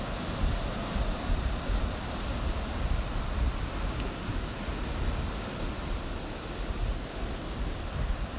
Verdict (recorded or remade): recorded